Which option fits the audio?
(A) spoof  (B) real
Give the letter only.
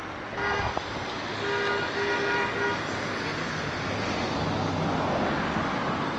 B